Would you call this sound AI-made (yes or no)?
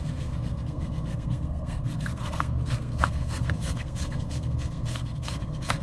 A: yes